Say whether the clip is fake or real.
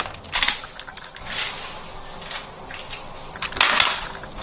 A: real